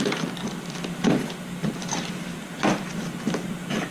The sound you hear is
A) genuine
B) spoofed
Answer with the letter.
A